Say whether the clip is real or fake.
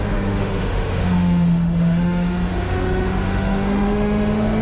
fake